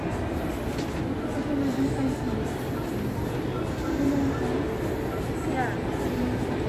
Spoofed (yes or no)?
no